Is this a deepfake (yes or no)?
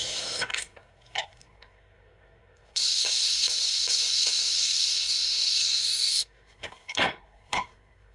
yes